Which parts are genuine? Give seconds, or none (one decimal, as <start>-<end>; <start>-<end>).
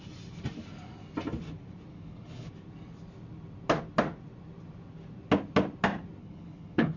0.0-1.9; 2.5-6.2